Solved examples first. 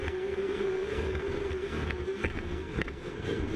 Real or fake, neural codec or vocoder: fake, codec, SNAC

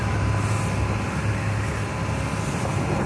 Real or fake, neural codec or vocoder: real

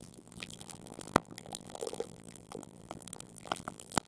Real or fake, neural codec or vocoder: fake, vocoder, BigVGAN v2